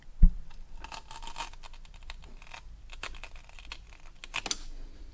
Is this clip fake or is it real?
real